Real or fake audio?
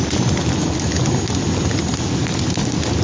real